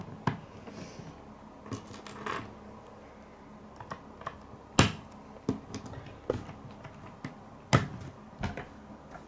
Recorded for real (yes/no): yes